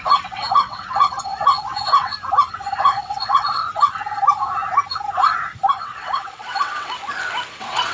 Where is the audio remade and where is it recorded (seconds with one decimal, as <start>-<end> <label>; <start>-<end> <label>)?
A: 0.0-2.1 remade; 2.1-2.8 recorded; 2.8-3.6 remade; 3.6-5.8 recorded; 5.8-7.0 remade; 7.0-7.5 recorded; 7.5-7.9 remade

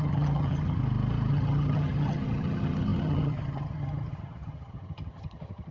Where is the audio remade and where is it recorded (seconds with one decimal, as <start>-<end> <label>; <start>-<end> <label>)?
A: 0.0-0.8 remade; 0.8-1.3 recorded; 1.3-5.7 remade

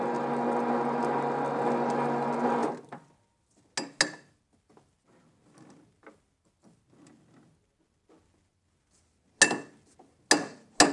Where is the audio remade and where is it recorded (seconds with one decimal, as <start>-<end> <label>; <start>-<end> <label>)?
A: 0.0-10.9 recorded

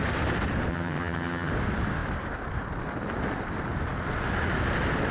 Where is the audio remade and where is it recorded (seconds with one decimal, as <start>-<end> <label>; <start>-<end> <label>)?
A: 0.0-0.7 recorded; 0.7-1.5 remade; 1.5-5.1 recorded

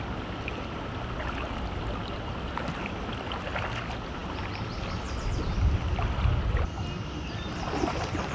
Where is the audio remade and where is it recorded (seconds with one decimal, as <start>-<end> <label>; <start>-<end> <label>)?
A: 0.0-8.3 recorded